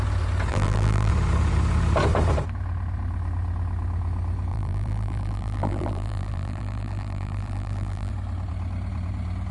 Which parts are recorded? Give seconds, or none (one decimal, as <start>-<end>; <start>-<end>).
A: 0.0-0.5; 1.1-4.5; 8.1-9.5